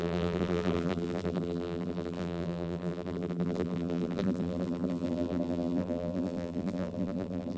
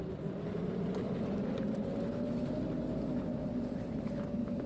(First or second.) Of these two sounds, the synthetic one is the first